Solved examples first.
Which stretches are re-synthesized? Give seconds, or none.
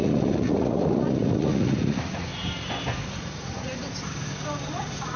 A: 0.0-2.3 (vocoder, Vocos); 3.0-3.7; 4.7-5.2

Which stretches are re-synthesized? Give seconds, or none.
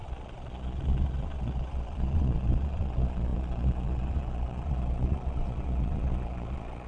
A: 0.0-6.9 (vocoder, Vocos)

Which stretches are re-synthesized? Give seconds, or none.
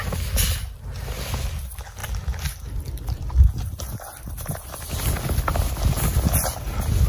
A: none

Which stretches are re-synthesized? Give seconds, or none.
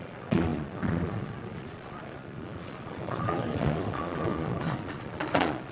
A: 0.0-5.7 (vocoder, Vocos)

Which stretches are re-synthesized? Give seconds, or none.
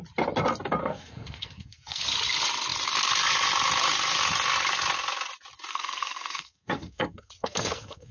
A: 0.8-2.0 (codec, SNAC); 5.7-8.1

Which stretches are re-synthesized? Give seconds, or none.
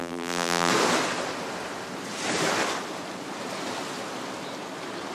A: 0.0-0.7 (vocoder, BigVGAN v2)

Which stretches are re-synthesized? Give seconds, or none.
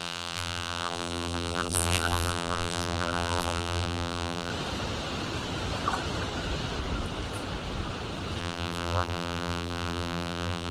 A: 0.0-4.5 (vocoder, BigVGAN v2); 8.4-10.7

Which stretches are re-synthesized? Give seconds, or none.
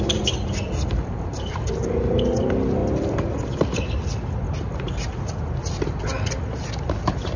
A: none